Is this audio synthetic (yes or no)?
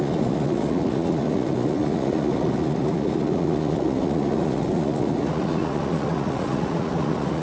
yes